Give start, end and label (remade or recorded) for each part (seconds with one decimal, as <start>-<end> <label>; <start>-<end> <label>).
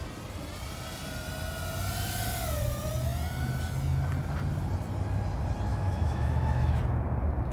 0.0-5.7 recorded; 5.7-6.8 remade; 6.8-7.5 recorded